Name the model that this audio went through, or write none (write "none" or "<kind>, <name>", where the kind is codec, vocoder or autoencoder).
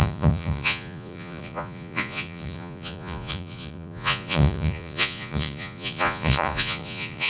vocoder, Vocos